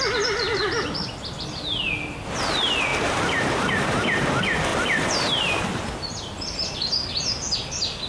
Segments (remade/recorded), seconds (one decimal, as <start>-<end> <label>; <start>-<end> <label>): 0.0-2.9 recorded; 2.9-3.7 remade; 3.7-4.7 recorded; 4.7-5.3 remade; 5.3-8.1 recorded